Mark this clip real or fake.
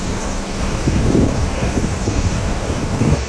fake